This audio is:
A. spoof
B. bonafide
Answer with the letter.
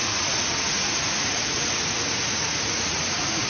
A